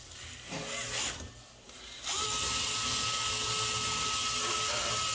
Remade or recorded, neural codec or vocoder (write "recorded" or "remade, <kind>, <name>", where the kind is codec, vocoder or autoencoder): recorded